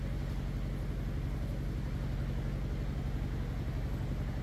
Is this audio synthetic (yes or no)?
no